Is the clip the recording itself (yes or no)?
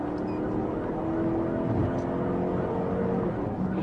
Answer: yes